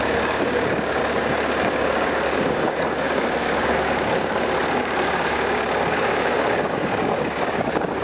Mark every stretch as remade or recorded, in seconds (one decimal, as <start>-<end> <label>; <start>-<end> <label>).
0.0-1.0 remade; 1.0-1.6 recorded; 1.6-8.0 remade